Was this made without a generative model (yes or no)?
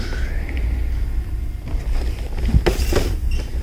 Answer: yes